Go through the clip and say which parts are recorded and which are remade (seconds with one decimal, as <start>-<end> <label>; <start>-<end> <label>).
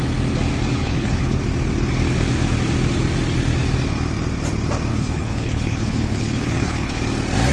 0.0-0.8 recorded; 0.8-1.4 remade; 1.4-4.9 recorded; 4.9-7.0 remade; 7.0-7.5 recorded